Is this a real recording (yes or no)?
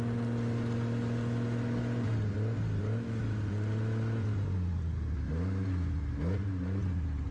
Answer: yes